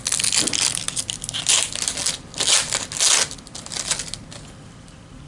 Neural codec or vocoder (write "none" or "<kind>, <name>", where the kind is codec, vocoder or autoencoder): none